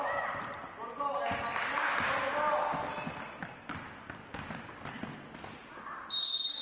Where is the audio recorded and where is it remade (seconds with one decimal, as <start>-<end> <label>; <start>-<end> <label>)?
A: 0.0-6.6 recorded